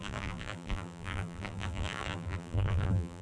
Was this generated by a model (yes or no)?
yes